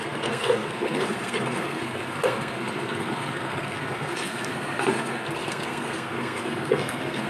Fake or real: fake